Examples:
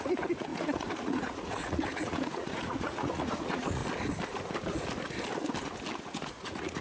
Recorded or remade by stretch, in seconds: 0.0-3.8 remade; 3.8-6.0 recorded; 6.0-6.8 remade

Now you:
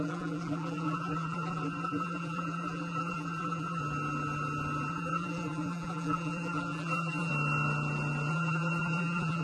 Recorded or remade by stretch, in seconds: 0.0-3.8 remade; 3.8-4.9 recorded; 4.9-7.3 remade; 7.3-8.3 recorded; 8.3-9.4 remade

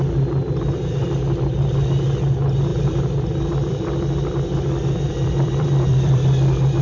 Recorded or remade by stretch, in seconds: 0.0-2.7 recorded; 2.7-6.8 remade

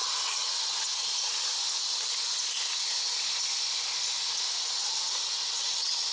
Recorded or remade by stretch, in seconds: 0.0-1.0 remade; 1.0-4.7 recorded; 4.7-6.1 remade

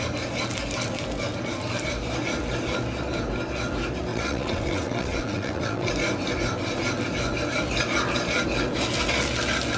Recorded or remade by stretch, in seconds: 0.0-4.1 recorded; 4.1-5.9 remade; 5.9-9.8 recorded